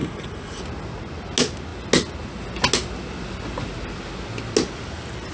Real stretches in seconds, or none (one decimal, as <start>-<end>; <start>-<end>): 0.6-5.3